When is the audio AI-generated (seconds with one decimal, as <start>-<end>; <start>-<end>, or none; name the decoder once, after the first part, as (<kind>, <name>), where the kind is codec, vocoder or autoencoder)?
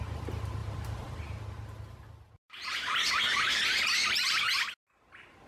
0.6-1.4 (vocoder, BigVGAN v2); 3.3-4.4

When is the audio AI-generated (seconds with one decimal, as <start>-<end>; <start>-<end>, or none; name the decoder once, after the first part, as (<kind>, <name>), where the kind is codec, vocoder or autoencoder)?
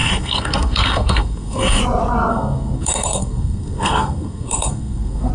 0.0-1.8 (codec, SNAC); 2.3-5.3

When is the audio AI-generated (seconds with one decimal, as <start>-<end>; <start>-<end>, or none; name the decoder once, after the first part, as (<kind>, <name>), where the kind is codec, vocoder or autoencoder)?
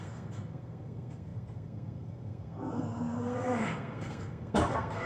0.0-5.1 (codec, SNAC)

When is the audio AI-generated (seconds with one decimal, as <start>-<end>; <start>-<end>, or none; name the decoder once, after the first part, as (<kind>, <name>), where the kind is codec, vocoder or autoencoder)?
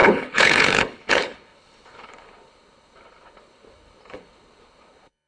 0.0-5.3 (codec, HILCodec)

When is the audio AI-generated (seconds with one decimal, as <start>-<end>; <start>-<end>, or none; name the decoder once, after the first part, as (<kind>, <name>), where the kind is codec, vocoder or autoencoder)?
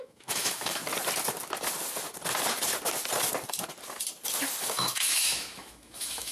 0.0-0.8 (autoencoder, DAC-VAE); 4.6-6.3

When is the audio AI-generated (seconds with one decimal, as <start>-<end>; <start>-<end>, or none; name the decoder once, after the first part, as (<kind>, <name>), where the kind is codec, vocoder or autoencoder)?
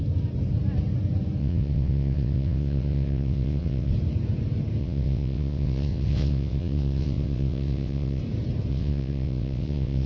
1.4-3.9 (vocoder, WaveNeXt); 4.8-8.2; 8.7-10.1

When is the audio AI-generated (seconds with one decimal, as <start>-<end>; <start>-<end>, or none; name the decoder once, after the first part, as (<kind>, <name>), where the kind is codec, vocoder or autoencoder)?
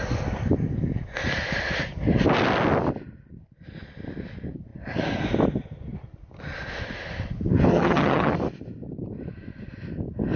7.7-8.3 (vocoder, HiFi-GAN)